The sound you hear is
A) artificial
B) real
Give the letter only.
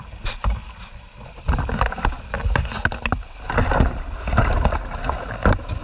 B